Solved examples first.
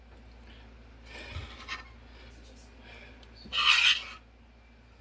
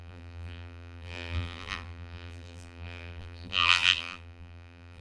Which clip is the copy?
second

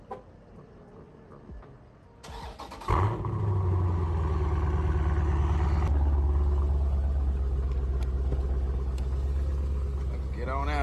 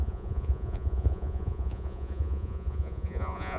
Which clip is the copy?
second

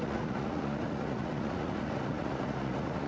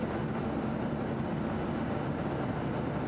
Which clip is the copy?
first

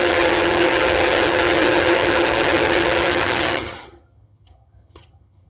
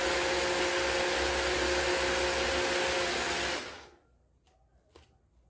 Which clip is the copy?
first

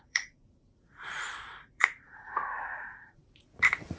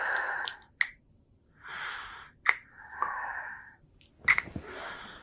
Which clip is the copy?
first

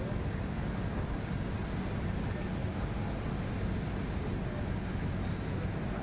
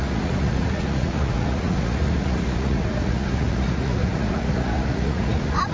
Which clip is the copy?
second